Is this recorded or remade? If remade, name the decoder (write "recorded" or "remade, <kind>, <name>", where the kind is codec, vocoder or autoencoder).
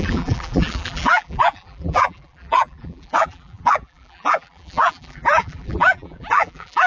remade, vocoder, BigVGAN v2